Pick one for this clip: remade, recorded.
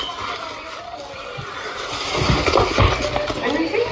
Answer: recorded